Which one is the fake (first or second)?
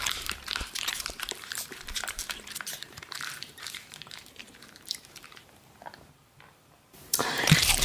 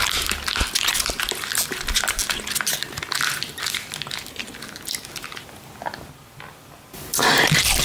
first